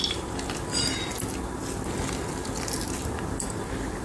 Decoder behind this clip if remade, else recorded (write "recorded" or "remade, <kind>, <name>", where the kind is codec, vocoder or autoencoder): recorded